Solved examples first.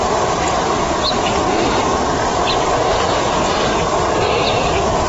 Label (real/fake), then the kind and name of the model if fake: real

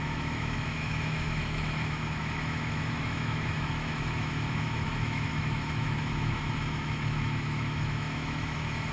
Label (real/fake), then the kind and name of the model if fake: fake, autoencoder, DAC-VAE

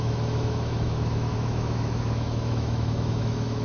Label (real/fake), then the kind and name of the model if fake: fake, autoencoder, DAC-VAE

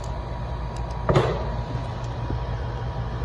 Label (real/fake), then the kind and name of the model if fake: real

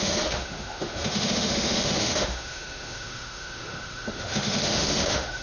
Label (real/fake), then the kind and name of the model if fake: fake, autoencoder, DAC-VAE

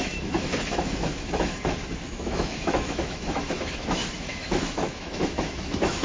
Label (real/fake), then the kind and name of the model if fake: fake, autoencoder, DAC-VAE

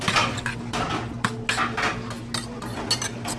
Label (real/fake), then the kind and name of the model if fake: real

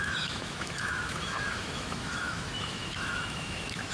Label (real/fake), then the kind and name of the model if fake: fake, autoencoder, DAC-VAE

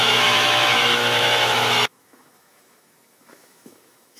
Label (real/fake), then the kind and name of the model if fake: fake, autoencoder, DAC-VAE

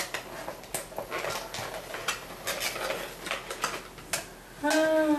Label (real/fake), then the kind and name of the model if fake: real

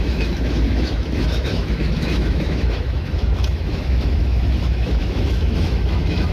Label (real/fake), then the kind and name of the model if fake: fake, autoencoder, DAC-VAE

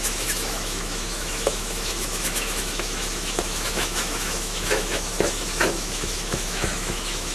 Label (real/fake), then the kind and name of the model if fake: fake, autoencoder, DAC-VAE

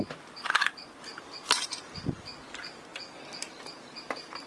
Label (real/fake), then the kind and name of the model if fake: real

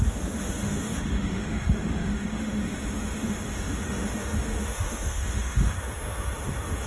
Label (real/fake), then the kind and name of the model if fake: fake, autoencoder, DAC-VAE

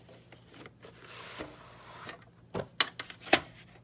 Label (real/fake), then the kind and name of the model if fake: real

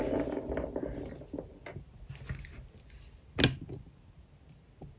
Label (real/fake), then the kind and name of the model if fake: real